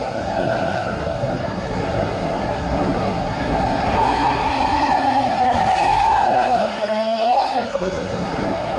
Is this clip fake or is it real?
fake